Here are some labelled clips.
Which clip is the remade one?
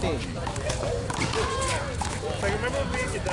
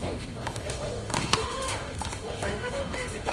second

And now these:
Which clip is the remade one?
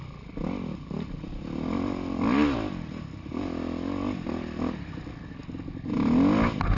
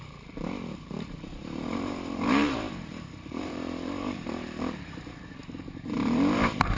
second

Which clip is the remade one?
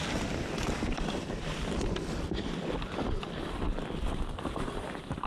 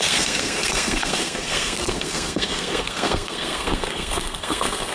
second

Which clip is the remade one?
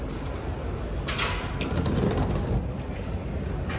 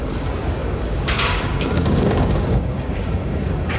second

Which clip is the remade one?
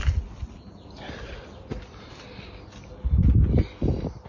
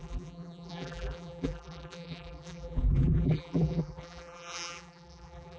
second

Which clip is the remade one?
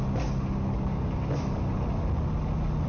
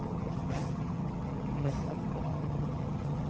second